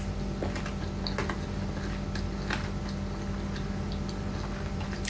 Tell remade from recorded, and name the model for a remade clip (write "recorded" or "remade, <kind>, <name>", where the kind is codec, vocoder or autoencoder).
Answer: recorded